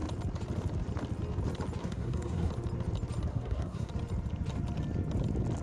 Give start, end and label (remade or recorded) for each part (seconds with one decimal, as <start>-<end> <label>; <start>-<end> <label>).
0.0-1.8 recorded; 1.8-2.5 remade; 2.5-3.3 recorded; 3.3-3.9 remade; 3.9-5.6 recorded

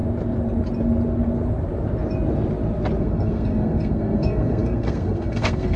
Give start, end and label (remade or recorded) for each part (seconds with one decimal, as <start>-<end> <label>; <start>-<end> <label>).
0.0-3.0 recorded; 3.0-5.8 remade

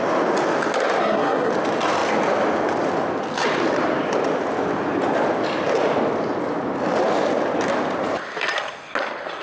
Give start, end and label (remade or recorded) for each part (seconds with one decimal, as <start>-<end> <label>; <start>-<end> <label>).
0.0-1.0 recorded; 1.0-1.5 remade; 1.5-9.4 recorded